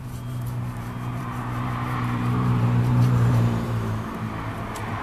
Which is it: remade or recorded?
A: remade